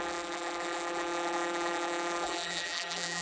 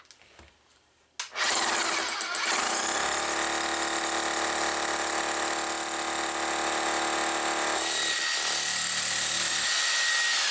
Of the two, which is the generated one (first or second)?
first